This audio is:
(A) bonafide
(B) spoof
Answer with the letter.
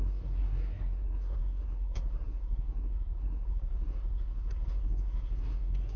B